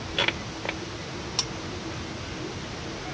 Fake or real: real